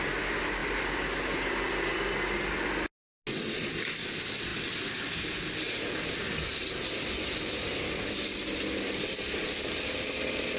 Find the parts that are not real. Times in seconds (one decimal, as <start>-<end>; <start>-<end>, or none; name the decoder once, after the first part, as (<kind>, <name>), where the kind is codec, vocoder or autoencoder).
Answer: none